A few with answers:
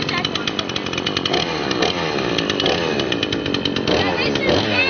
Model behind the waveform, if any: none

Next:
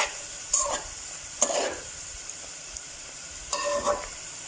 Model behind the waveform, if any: vocoder, BigVGAN v2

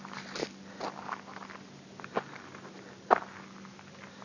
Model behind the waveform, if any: none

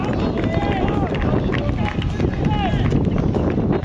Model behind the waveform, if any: none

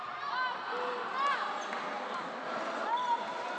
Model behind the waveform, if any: none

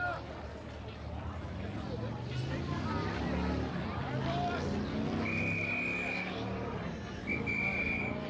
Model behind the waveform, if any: none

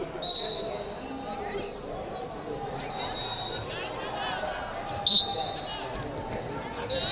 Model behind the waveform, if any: none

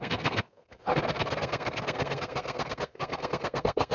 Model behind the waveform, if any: codec, SNAC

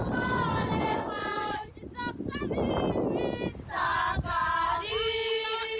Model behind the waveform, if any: none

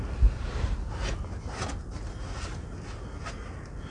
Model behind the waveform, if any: none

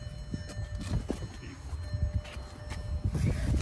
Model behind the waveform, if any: none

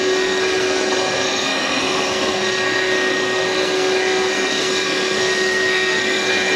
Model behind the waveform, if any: codec, SNAC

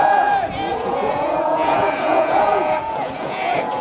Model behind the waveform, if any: vocoder, Vocos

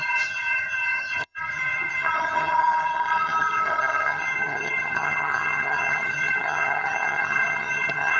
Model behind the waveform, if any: vocoder, HiFi-GAN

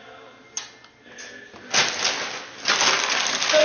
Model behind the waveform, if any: none